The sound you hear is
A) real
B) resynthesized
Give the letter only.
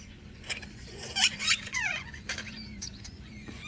B